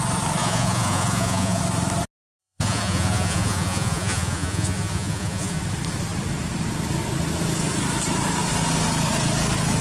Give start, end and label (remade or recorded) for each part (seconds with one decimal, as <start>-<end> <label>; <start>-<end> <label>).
0.0-0.4 recorded; 0.4-1.6 remade; 1.6-2.4 recorded; 2.4-5.6 remade; 5.6-9.8 recorded